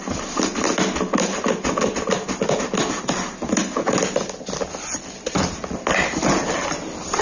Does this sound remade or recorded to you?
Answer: recorded